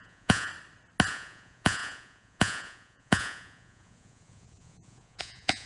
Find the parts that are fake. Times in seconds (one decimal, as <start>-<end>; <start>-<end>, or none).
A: 0.0-0.5; 1.1-5.7